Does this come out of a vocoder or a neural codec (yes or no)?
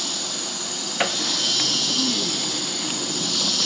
no